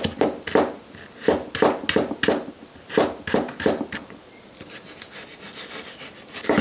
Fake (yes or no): no